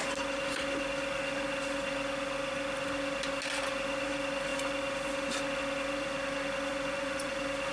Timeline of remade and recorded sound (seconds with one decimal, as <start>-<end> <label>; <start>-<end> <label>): 0.0-6.7 recorded; 6.7-7.3 remade; 7.3-7.7 recorded